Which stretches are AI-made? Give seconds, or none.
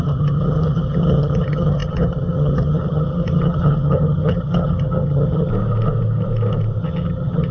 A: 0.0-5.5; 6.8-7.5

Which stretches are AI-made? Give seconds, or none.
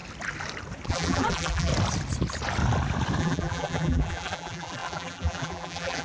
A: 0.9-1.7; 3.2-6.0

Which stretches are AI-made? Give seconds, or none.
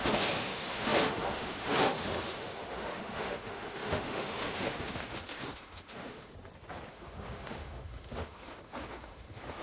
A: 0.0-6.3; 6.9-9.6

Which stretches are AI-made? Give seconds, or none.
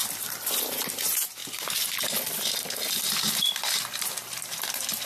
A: none